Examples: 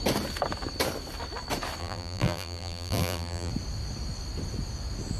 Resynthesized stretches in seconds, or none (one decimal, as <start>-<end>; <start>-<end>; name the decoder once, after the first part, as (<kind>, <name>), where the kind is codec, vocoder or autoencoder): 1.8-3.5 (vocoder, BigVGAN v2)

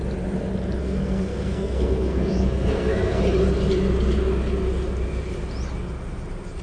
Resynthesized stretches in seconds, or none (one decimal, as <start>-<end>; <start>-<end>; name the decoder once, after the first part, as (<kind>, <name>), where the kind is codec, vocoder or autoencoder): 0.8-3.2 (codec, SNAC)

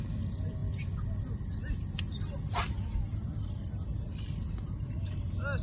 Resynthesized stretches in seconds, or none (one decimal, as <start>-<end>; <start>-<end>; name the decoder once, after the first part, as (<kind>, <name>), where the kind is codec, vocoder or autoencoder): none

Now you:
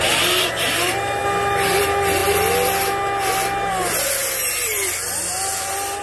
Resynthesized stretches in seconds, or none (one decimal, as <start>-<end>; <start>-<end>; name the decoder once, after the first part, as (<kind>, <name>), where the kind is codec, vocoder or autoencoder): none

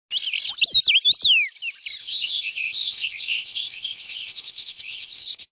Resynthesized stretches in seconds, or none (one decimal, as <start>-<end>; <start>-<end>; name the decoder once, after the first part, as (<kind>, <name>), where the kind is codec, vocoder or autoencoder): 2.0-5.5 (codec, ZipCodec)